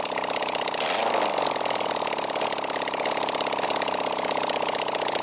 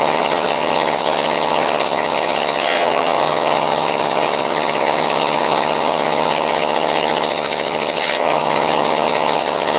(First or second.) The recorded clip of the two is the first